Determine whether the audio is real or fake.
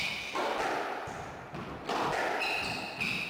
real